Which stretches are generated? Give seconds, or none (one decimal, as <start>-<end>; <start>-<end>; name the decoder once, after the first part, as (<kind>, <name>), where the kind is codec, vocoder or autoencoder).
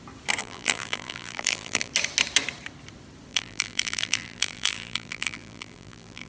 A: 0.4-1.9 (vocoder, BigVGAN v2); 3.3-6.3